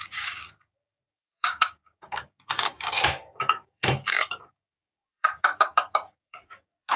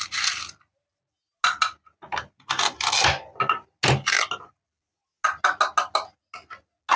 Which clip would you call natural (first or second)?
second